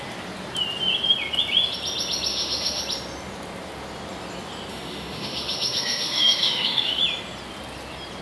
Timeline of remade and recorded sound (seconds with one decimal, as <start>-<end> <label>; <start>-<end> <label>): 0.0-2.3 recorded; 2.3-2.8 remade; 2.8-4.7 recorded; 4.7-7.0 remade; 7.0-8.2 recorded